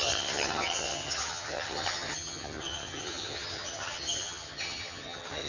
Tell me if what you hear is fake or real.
fake